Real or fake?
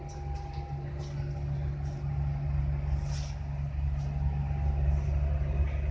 real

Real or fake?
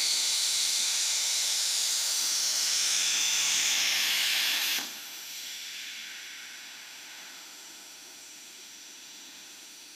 fake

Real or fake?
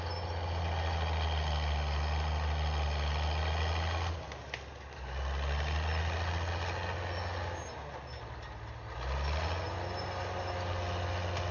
real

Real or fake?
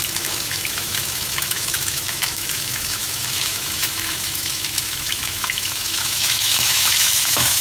fake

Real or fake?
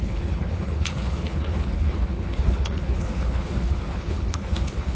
fake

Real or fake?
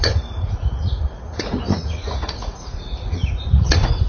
fake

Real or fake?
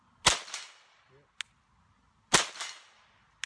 real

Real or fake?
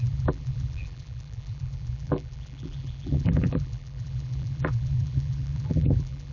fake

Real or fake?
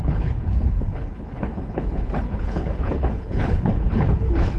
fake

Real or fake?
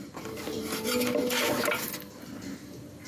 real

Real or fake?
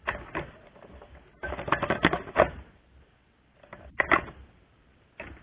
real